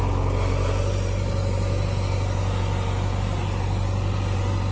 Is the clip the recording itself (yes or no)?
yes